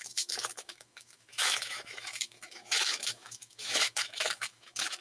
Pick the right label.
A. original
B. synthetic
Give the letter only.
B